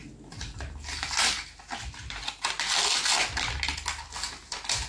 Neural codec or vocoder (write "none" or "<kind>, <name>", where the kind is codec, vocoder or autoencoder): none